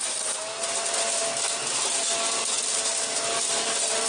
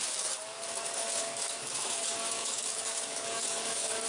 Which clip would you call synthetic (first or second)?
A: second